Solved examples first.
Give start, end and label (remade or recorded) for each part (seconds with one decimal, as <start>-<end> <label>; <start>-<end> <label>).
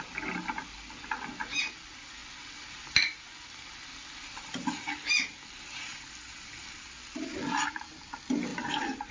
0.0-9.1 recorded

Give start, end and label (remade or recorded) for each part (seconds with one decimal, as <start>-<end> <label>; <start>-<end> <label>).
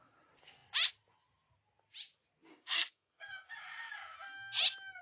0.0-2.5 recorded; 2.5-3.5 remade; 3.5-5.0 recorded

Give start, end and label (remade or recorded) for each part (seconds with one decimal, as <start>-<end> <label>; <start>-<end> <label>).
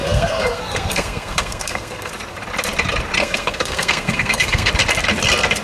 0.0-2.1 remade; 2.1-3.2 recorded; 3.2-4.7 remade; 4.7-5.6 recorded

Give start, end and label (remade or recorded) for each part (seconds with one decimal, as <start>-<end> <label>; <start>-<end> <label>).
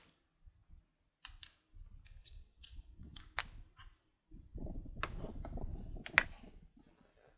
0.0-2.2 recorded; 2.2-3.2 remade; 3.2-7.4 recorded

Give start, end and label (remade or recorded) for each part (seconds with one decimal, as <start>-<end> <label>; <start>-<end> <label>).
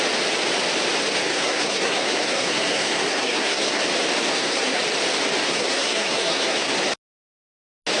0.0-1.2 recorded; 1.2-3.8 remade; 3.8-4.3 recorded; 4.3-4.8 remade; 4.8-5.4 recorded; 5.4-6.7 remade; 6.7-8.0 recorded